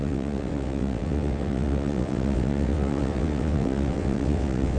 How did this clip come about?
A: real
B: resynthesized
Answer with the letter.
B